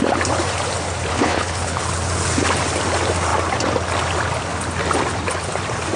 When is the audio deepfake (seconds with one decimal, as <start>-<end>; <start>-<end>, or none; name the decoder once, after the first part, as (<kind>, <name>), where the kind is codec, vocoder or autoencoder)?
1.1-1.8 (codec, HILCodec)